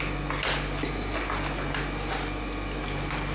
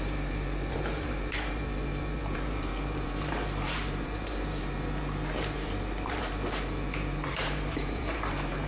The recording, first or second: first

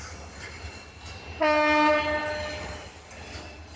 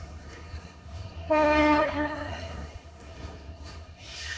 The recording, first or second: first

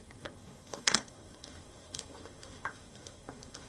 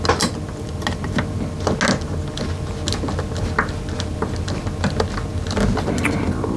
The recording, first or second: second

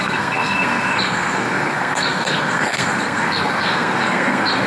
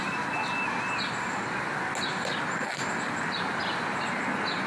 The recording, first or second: second